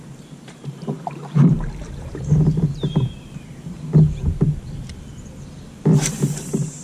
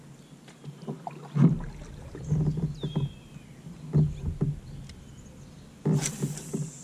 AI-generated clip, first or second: first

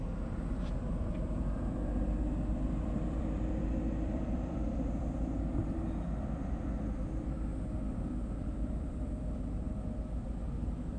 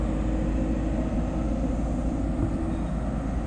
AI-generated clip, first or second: first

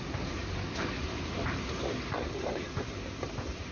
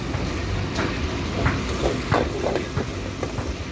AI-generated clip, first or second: first